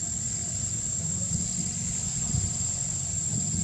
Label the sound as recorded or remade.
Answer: remade